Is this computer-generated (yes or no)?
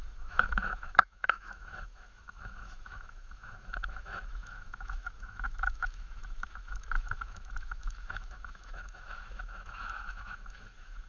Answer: yes